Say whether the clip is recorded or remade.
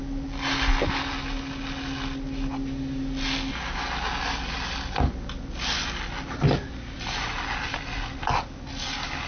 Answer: recorded